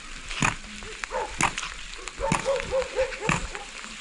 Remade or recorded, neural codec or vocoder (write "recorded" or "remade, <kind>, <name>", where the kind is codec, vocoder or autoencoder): recorded